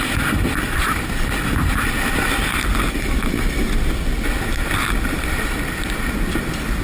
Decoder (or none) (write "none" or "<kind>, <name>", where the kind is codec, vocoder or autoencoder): none